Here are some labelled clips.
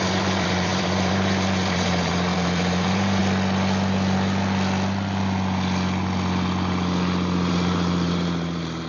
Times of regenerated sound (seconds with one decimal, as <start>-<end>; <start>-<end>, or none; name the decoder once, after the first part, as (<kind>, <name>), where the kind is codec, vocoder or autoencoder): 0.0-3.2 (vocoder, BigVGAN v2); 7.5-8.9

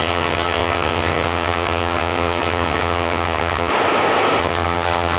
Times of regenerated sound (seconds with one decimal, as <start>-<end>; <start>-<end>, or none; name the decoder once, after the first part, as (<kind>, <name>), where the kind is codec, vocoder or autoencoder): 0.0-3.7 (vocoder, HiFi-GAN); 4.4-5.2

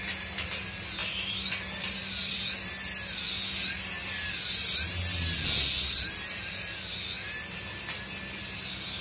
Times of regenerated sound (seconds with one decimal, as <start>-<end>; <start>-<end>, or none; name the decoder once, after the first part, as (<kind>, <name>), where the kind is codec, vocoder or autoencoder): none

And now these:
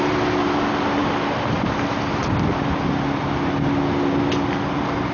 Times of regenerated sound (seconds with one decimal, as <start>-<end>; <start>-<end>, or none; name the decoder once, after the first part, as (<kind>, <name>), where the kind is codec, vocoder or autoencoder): none